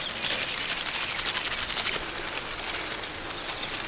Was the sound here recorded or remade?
recorded